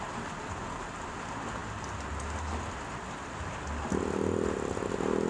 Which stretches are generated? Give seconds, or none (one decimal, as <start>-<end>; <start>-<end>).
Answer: none